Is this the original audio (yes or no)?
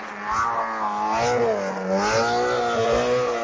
yes